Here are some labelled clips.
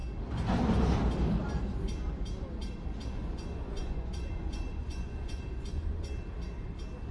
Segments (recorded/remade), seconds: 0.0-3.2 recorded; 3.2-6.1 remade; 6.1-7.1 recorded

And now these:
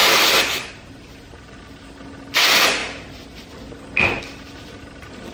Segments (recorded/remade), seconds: 0.0-0.9 recorded; 0.9-2.8 remade; 2.8-4.2 recorded; 4.2-5.3 remade

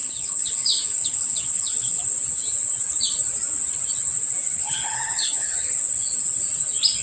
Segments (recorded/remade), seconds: 0.0-2.0 remade; 2.0-4.6 recorded; 4.6-5.8 remade; 5.8-7.0 recorded

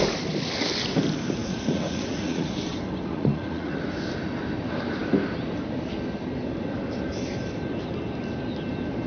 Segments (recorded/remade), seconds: 0.0-1.4 recorded; 1.4-2.5 remade; 2.5-3.1 recorded; 3.1-3.8 remade; 3.8-9.1 recorded

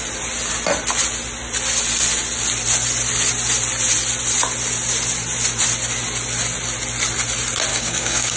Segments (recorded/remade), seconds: 0.0-7.7 recorded; 7.7-8.4 remade

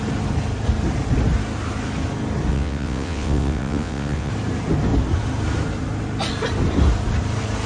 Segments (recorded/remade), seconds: 0.0-2.5 recorded; 2.5-4.3 remade; 4.3-7.7 recorded

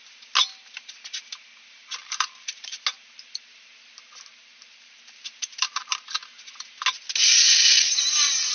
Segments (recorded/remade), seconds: 0.0-2.0 recorded; 2.0-2.8 remade; 2.8-3.5 recorded; 3.5-6.2 remade; 6.2-8.5 recorded